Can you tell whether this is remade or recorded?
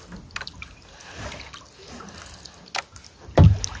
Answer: recorded